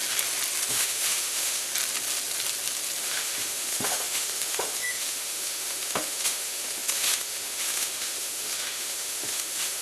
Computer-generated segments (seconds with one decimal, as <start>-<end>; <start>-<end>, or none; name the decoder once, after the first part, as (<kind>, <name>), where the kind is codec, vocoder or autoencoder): 0.7-1.7 (autoencoder, DAC-VAE); 3.0-9.8